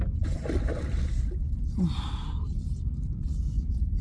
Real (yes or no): yes